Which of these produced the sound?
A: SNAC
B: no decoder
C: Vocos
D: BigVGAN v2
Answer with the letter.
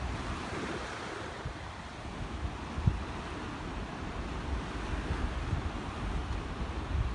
B